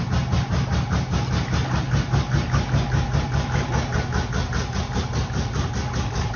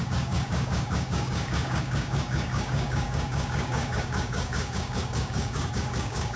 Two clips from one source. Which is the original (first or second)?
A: first